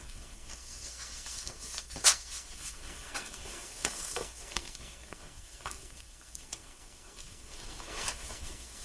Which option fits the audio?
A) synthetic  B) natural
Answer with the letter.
A